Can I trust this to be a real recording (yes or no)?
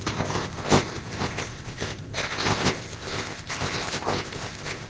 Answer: no